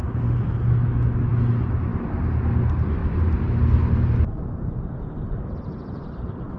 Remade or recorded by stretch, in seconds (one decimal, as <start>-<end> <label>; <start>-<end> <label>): 0.0-1.3 remade; 1.3-6.6 recorded